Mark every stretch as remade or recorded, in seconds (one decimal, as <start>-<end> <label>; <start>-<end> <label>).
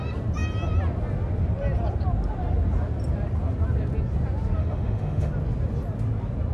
0.0-4.6 recorded; 4.6-5.3 remade; 5.3-6.5 recorded